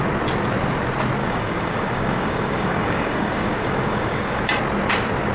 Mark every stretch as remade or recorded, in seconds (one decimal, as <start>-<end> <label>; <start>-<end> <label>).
0.0-1.2 recorded; 1.2-4.4 remade; 4.4-5.3 recorded